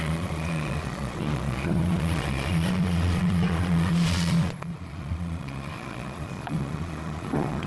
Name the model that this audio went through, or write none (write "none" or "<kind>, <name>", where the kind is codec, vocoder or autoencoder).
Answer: vocoder, Vocos